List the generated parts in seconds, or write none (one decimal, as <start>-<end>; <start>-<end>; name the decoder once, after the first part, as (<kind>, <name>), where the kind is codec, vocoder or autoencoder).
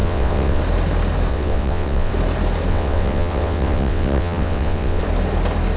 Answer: 0.0-0.6 (vocoder, WaveNeXt); 1.3-2.1; 2.7-5.0